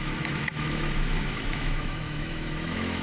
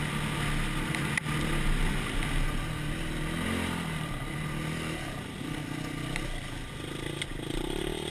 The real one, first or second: second